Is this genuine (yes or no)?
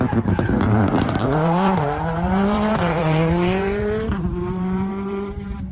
no